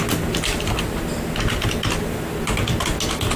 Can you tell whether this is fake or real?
real